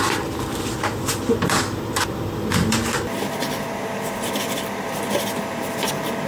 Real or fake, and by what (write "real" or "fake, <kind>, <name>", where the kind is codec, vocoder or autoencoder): fake, vocoder, BigVGAN v2